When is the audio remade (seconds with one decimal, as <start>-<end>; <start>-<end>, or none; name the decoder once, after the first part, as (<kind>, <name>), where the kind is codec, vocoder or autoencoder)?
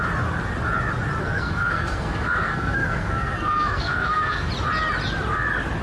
1.2-4.5 (codec, SNAC)